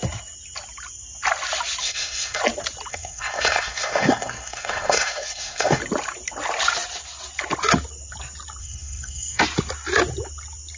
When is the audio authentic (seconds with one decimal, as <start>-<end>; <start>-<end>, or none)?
0.0-1.8; 2.4-2.9; 5.8-8.6; 9.4-10.8